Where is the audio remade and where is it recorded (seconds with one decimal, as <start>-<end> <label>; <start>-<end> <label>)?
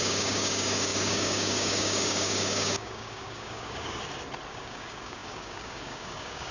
0.0-4.0 remade; 4.0-4.5 recorded; 4.5-6.5 remade